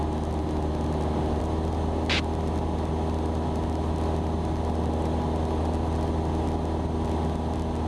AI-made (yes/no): no